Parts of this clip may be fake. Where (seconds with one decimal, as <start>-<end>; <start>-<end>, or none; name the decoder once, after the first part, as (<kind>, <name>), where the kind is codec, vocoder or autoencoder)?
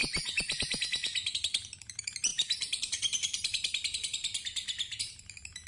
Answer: 0.0-5.7 (vocoder, BigVGAN v2)